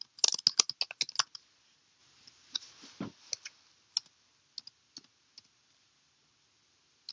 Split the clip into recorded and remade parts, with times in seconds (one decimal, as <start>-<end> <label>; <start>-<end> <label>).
0.0-7.1 recorded